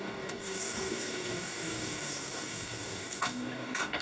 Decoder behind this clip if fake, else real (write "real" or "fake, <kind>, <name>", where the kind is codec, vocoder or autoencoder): fake, codec, DAC